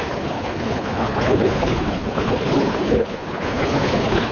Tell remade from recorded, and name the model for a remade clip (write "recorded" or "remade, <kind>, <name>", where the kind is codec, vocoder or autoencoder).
remade, codec, HILCodec